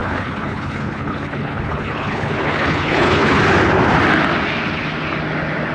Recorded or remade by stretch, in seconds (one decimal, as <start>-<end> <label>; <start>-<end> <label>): 0.0-3.4 remade; 3.4-5.7 recorded